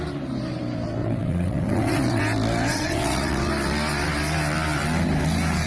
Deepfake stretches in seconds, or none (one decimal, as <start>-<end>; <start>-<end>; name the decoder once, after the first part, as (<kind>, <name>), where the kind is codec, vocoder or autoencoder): 1.0-2.2 (vocoder, WaveNeXt); 2.7-3.5

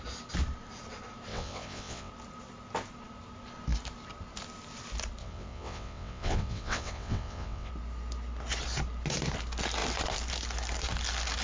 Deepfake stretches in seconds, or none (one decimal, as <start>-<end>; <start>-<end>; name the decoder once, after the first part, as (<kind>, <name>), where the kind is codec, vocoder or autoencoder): 1.3-2.1 (vocoder, WaveNeXt); 5.2-7.7

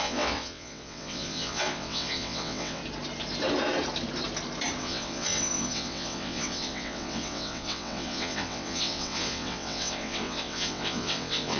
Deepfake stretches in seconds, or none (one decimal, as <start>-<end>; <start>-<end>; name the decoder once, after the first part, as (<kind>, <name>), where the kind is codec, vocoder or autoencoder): 0.0-2.8 (vocoder, WaveNeXt); 4.8-11.6

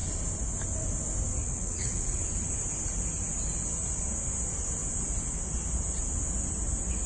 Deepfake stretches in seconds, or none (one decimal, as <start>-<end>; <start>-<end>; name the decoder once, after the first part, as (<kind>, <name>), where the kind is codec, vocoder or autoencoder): 1.4-2.2 (vocoder, WaveNeXt)

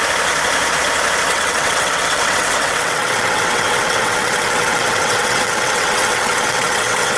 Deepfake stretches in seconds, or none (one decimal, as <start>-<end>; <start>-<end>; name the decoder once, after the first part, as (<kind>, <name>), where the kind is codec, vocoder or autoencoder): 1.3-7.2 (vocoder, WaveNeXt)

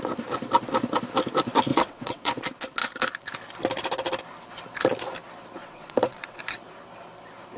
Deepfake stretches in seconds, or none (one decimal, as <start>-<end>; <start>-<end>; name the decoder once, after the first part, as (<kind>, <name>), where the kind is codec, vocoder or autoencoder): 1.7-2.4 (vocoder, WaveNeXt); 5.6-6.4

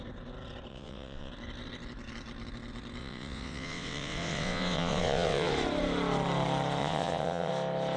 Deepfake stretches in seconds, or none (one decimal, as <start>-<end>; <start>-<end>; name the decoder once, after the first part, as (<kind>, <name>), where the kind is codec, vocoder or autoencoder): 0.7-1.3 (vocoder, WaveNeXt); 3.0-5.5; 6.8-7.5

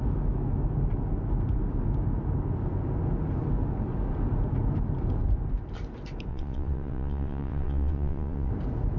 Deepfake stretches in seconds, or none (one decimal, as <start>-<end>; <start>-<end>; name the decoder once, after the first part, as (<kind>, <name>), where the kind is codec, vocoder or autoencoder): 6.3-8.5 (vocoder, WaveNeXt)